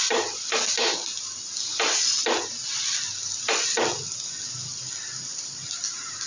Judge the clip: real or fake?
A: real